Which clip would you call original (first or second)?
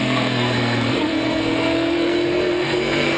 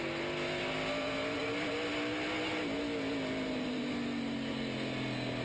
second